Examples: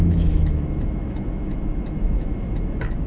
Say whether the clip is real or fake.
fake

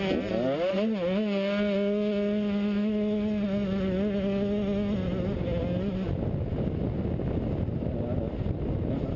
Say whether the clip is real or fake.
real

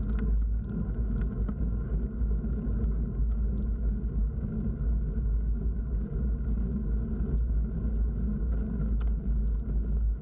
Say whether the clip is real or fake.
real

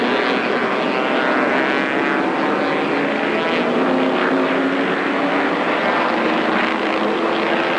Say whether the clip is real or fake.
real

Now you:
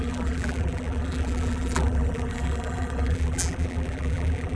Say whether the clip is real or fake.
fake